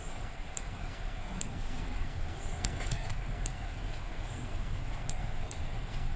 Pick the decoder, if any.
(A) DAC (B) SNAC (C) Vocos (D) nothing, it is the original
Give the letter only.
B